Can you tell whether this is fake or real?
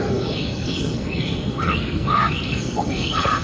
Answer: fake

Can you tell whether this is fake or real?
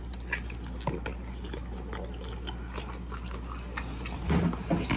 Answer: real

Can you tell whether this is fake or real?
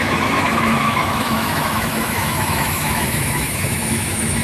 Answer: fake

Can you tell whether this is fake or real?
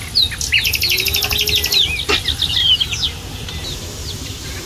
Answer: real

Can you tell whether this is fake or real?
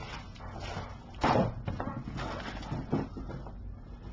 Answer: real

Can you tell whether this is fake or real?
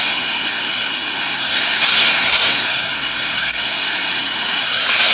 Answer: fake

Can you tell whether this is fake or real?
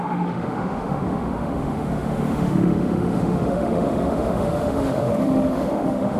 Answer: fake